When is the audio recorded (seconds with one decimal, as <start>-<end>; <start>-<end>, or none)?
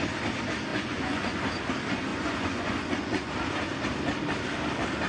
0.0-0.7; 1.4-2.1; 3.3-5.1